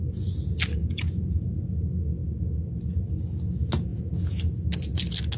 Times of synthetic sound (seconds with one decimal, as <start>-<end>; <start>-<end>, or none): 0.8-1.4; 3.9-4.4